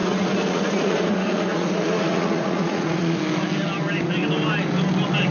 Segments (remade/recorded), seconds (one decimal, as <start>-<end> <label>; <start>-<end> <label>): 0.0-3.2 remade; 3.2-5.3 recorded